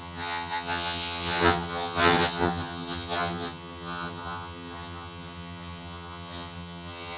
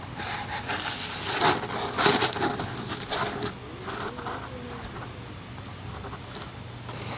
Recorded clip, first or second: second